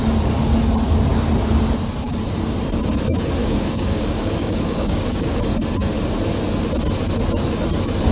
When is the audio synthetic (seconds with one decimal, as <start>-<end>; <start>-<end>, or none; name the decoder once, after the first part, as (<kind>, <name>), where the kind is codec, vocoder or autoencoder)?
3.4-5.4 (codec, DAC)